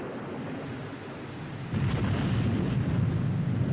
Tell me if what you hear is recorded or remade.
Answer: recorded